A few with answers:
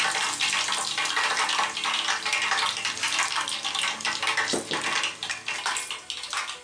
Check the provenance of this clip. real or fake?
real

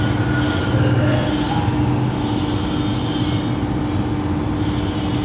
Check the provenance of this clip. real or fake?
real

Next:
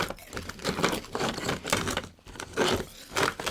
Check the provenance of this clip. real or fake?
real